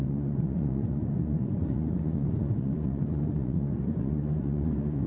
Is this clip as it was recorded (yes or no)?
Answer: no